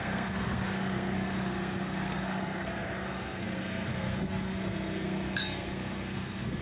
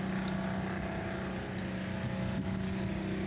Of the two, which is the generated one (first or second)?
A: first